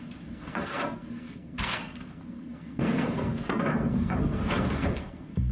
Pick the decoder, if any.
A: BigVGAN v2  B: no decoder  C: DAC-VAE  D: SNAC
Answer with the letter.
D